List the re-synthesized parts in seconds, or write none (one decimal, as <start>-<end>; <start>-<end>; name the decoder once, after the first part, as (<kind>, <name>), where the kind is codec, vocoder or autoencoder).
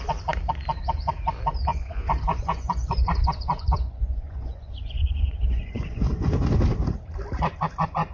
1.7-6.4 (vocoder, Vocos)